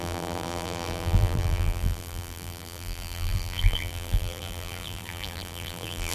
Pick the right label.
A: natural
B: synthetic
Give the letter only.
B